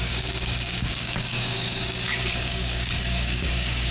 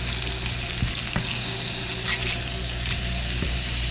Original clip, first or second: second